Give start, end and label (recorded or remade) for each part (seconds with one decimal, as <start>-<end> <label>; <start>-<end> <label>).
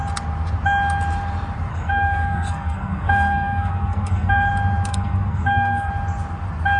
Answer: 0.0-1.7 recorded; 1.7-4.5 remade; 4.5-4.9 recorded; 4.9-5.9 remade; 5.9-6.8 recorded